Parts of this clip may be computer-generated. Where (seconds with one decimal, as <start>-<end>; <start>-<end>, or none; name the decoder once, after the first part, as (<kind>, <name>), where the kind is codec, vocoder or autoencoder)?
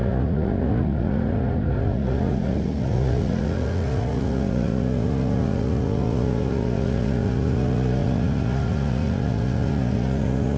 0.0-10.6 (vocoder, Vocos)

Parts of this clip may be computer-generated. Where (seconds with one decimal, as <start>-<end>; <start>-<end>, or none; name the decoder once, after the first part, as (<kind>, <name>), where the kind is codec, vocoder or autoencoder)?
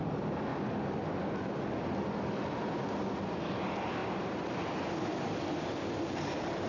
0.5-1.0 (vocoder, BigVGAN v2); 4.0-5.3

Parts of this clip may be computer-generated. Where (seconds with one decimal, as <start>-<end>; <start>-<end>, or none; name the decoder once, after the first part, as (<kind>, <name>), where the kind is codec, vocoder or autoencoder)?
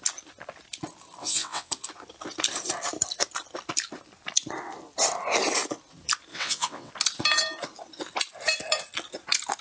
1.2-1.7 (vocoder, WaveNeXt); 6.3-6.9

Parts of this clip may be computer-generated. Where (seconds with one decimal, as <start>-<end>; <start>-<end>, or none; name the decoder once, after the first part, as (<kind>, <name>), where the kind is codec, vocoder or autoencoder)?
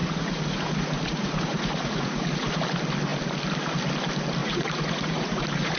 0.0-2.6 (vocoder, Vocos); 4.4-5.8